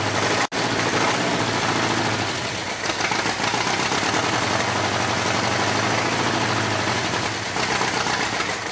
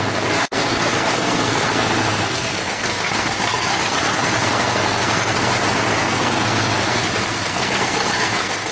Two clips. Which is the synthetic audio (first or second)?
second